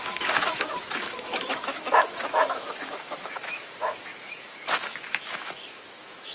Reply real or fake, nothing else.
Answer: fake